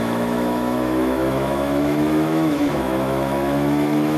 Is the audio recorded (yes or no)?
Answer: no